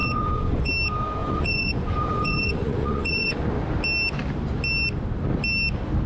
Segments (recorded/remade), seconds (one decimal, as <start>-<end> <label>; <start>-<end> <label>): 0.0-0.7 remade; 0.7-1.2 recorded; 1.2-3.4 remade; 3.4-6.1 recorded